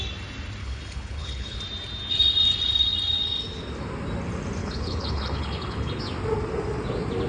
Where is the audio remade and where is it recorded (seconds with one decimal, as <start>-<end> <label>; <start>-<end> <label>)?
0.0-0.6 recorded; 0.6-1.6 remade; 1.6-4.6 recorded; 4.6-6.0 remade; 6.0-7.3 recorded